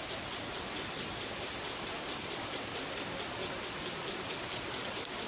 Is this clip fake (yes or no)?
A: no